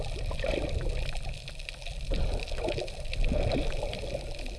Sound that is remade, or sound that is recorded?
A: recorded